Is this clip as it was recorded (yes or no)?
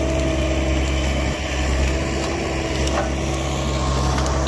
yes